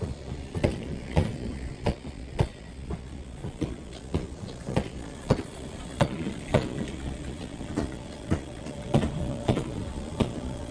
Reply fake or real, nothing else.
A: fake